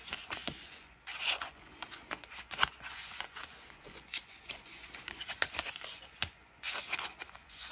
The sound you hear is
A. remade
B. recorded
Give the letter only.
A